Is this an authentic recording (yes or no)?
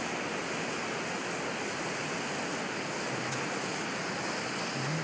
yes